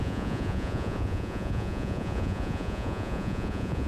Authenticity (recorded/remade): remade